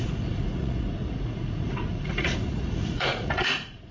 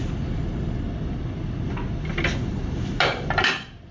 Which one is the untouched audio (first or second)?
second